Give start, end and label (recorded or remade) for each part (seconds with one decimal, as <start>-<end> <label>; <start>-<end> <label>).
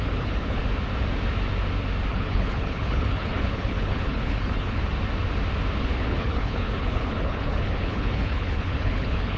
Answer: 0.0-0.6 remade; 0.6-2.1 recorded; 2.1-4.8 remade; 4.8-5.8 recorded; 5.8-9.4 remade